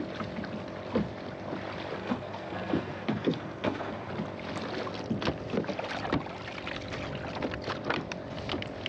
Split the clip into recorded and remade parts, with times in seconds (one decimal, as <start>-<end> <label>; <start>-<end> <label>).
0.0-2.0 recorded; 2.0-4.1 remade; 4.1-8.9 recorded